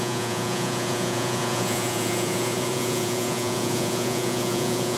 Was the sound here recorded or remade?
remade